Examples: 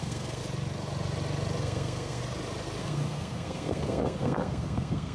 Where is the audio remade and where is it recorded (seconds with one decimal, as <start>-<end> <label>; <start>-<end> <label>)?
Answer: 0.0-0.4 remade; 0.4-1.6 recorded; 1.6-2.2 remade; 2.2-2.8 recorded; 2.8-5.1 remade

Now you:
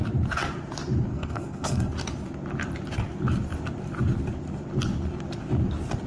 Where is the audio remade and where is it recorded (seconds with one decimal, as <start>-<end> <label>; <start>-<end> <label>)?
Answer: 0.0-1.1 recorded; 1.1-1.9 remade; 1.9-6.1 recorded

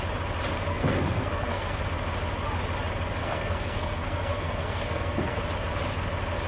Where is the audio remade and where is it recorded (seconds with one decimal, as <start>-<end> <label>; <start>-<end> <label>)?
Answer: 0.0-0.7 recorded; 0.7-1.8 remade; 1.8-3.2 recorded; 3.2-5.4 remade; 5.4-6.5 recorded

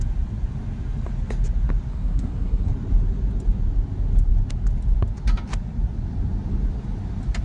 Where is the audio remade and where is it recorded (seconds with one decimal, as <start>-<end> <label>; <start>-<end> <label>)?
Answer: 0.0-1.9 recorded; 1.9-2.7 remade; 2.7-7.4 recorded